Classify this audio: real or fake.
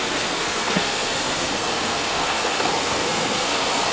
fake